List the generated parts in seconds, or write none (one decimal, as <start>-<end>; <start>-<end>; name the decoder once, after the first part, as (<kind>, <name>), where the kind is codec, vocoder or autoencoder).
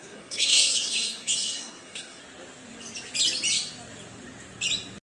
0.0-2.2 (codec, SNAC)